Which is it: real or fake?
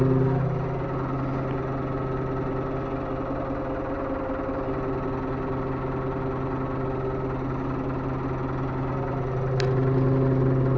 real